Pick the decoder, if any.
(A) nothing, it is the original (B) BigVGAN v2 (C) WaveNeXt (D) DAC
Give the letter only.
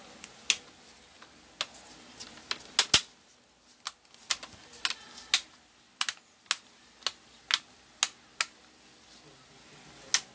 A